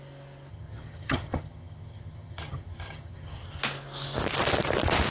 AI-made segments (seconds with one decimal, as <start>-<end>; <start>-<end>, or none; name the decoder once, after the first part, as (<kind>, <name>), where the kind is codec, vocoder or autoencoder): 0.5-3.6 (vocoder, HiFi-GAN)